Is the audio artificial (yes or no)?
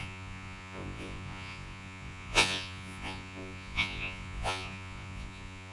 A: yes